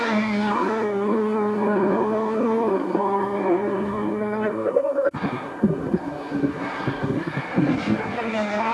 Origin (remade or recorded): remade